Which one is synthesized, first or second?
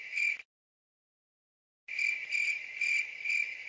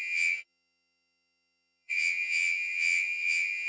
second